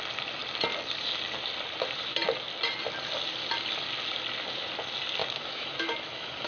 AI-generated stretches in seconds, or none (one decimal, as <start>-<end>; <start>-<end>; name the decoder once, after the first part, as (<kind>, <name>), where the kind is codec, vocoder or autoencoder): 5.2-6.5 (autoencoder, DAC-VAE)